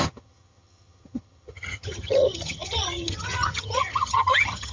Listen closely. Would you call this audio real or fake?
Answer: fake